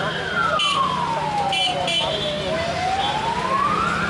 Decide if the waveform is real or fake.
real